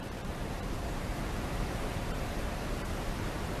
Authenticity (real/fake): fake